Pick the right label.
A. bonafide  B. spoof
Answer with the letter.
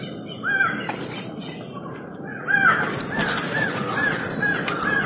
A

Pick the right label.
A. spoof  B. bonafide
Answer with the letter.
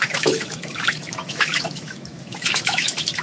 A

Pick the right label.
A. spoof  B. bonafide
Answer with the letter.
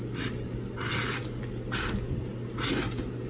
B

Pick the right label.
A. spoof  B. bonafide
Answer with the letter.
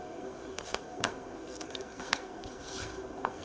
A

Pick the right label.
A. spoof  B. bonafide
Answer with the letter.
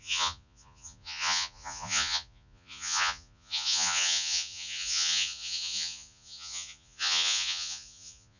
A